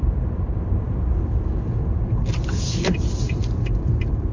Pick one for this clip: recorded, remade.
remade